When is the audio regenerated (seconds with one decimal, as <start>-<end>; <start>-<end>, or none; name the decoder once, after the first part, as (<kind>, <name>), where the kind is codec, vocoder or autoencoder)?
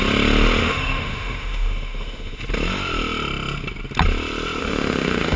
0.6-2.4 (autoencoder, DAC-VAE); 4.6-5.4